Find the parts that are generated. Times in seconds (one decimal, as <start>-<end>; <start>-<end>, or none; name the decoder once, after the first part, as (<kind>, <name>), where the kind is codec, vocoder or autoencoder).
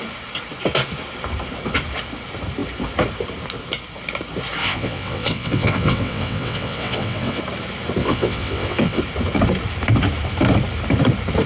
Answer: 4.6-7.4 (vocoder, WaveNeXt); 8.0-9.0